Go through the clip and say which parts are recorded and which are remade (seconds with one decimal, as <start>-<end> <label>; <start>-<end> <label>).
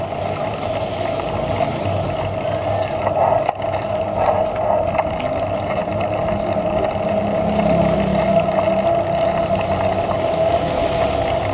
0.0-11.5 recorded